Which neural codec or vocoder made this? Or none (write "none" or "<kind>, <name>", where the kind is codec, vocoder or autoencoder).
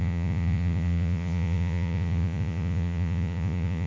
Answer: vocoder, Vocos